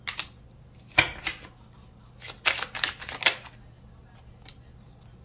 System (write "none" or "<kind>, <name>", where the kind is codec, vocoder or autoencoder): none